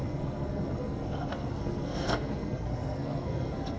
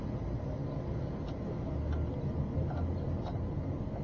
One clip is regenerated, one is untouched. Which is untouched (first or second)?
second